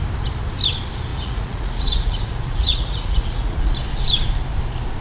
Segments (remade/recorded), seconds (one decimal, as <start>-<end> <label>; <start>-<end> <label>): 0.0-1.1 recorded; 1.1-3.7 remade; 3.7-5.0 recorded